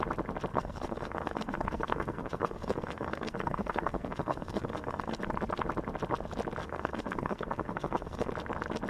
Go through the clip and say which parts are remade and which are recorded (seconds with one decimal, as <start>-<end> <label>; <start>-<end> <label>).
0.0-0.5 recorded; 0.5-5.2 remade; 5.2-6.6 recorded; 6.6-8.3 remade; 8.3-8.9 recorded